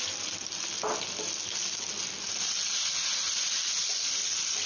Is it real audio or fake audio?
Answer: real